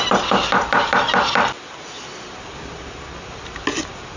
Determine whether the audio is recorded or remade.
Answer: recorded